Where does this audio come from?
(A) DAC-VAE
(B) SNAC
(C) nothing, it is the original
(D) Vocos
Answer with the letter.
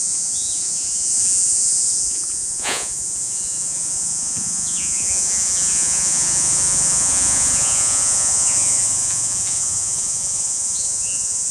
D